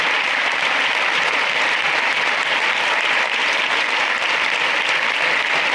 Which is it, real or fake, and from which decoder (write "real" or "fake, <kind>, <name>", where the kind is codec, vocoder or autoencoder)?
real